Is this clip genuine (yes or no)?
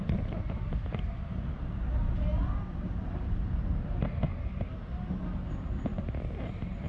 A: yes